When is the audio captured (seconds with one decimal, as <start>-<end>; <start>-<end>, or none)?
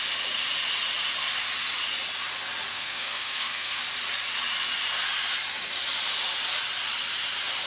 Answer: 0.0-2.7; 3.8-7.7